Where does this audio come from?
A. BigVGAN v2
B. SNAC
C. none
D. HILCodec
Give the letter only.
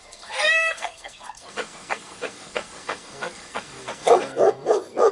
B